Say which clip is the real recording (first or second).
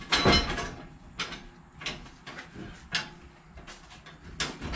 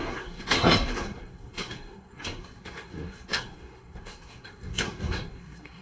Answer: first